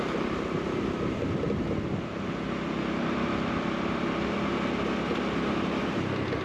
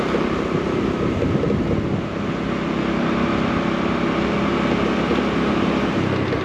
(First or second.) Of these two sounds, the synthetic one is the first